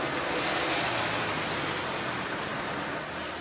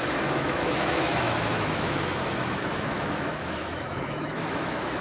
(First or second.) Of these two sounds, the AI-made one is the second